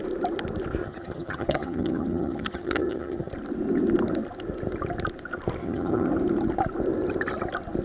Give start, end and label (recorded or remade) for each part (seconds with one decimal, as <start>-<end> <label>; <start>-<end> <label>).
0.0-0.8 recorded; 0.8-3.3 remade; 3.3-5.6 recorded; 5.6-6.1 remade; 6.1-7.8 recorded